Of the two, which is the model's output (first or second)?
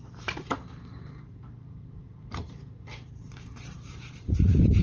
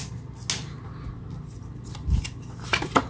first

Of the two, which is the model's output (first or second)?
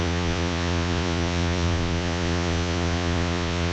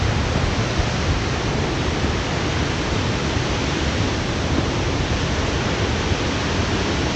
first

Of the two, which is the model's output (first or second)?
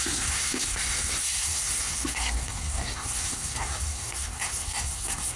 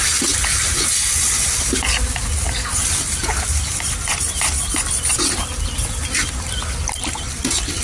first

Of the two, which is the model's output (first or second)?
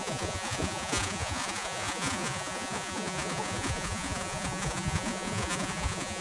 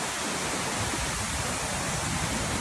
first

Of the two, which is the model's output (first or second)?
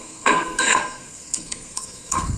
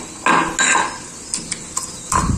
first